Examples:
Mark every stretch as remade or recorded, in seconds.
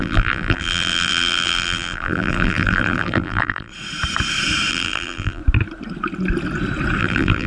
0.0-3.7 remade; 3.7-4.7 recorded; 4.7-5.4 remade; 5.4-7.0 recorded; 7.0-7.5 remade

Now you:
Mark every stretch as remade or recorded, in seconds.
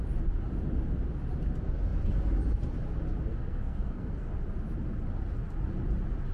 0.0-3.3 recorded; 3.3-4.3 remade; 4.3-6.3 recorded